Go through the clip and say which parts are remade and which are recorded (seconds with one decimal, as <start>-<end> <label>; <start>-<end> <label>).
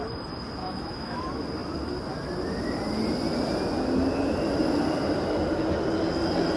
0.0-0.6 recorded; 0.6-1.2 remade; 1.2-6.6 recorded